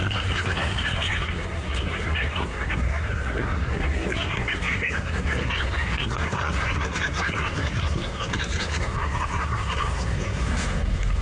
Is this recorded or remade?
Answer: remade